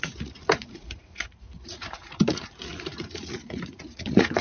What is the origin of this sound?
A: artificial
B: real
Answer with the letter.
A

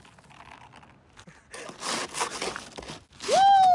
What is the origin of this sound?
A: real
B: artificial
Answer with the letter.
A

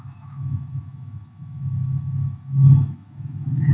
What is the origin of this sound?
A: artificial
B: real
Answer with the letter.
A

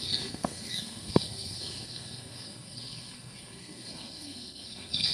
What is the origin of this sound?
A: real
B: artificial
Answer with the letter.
B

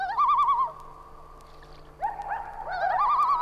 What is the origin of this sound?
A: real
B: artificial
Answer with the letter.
A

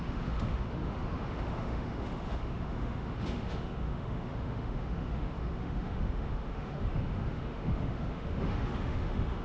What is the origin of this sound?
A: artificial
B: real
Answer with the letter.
A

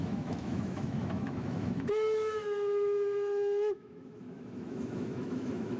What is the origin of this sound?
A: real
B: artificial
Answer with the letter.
B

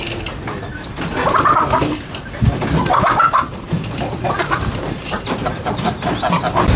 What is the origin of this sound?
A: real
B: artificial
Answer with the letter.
A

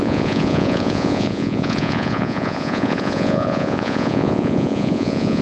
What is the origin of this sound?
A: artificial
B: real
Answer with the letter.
A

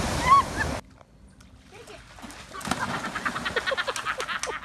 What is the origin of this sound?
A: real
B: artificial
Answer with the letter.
A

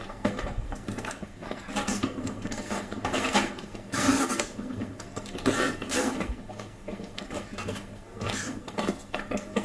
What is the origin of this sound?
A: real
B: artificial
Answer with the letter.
B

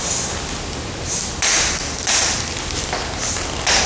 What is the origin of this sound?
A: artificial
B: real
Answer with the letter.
B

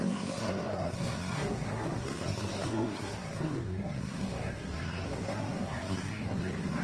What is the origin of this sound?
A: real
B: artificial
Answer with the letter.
B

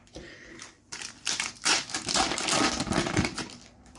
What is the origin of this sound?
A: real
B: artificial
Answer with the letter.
B